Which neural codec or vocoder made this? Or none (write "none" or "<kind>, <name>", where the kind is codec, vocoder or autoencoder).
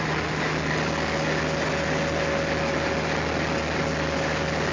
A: none